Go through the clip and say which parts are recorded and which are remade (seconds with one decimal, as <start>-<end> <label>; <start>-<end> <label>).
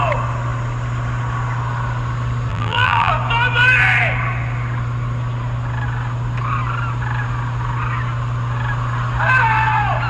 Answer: 0.0-2.5 recorded; 2.5-3.1 remade; 3.1-10.1 recorded